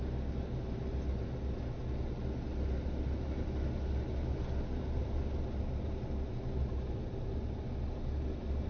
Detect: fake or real real